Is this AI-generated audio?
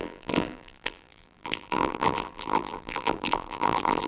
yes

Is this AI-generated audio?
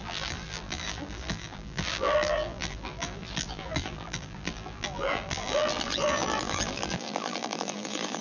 yes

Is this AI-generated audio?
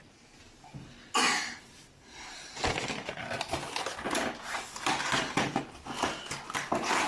no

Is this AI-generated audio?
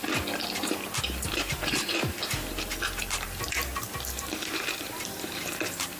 yes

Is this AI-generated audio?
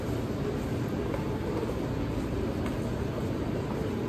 no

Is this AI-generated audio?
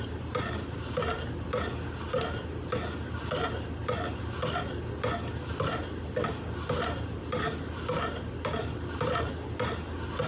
no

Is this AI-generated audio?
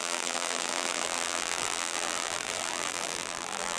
yes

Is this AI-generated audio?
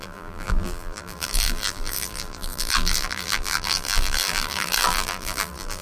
yes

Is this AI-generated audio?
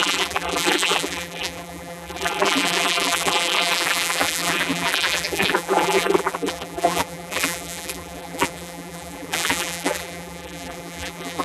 yes